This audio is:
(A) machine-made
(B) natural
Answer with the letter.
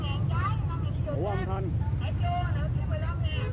B